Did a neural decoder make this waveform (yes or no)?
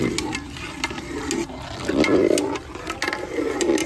no